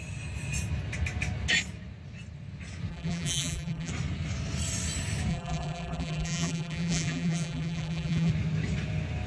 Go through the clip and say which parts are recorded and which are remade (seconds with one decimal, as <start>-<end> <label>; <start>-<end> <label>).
0.0-2.9 recorded; 2.9-3.9 remade; 3.9-5.3 recorded; 5.3-8.3 remade; 8.3-9.3 recorded